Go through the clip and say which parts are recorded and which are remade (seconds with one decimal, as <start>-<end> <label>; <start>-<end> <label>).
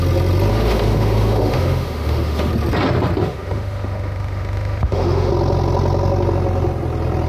0.0-0.5 recorded; 0.5-2.5 remade; 2.5-3.2 recorded; 3.2-5.3 remade; 5.3-7.3 recorded